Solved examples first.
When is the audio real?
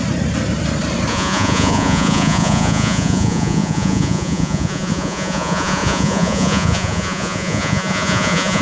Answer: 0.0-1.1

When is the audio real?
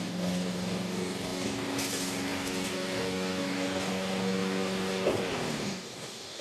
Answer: none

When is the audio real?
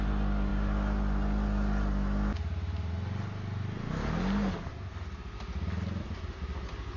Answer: 0.0-7.0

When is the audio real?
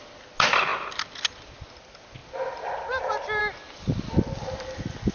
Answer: 0.0-5.1